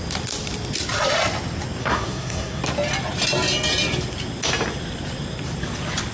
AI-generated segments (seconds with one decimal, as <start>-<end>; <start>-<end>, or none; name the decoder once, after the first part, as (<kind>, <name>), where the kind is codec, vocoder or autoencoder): 1.8-2.6 (codec, SNAC)